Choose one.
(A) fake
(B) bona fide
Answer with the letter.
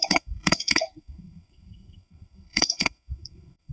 A